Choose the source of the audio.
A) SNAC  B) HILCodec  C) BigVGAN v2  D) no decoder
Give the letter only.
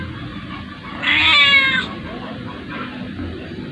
D